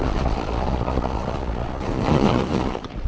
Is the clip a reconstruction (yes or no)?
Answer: yes